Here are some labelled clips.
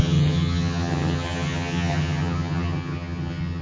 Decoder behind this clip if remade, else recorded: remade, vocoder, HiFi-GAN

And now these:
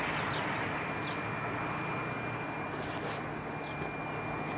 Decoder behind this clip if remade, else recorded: recorded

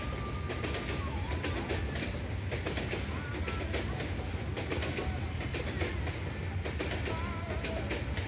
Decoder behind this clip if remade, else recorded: recorded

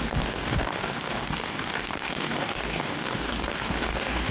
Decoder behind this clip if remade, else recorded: remade, codec, DAC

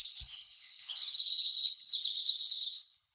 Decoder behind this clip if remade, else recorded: remade, codec, HILCodec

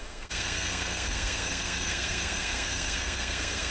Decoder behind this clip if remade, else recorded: remade, codec, SNAC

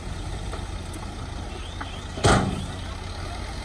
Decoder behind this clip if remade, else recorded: recorded